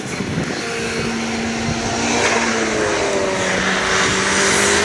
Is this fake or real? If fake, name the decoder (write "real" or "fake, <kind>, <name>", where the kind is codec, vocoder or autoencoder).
real